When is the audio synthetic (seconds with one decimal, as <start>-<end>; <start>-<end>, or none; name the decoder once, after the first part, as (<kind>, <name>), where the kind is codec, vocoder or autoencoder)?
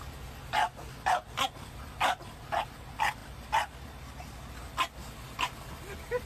none